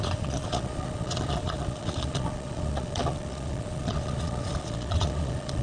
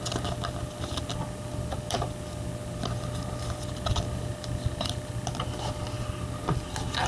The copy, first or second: first